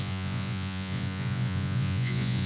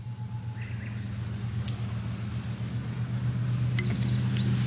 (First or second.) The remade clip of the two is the first